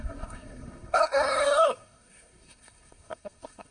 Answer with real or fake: fake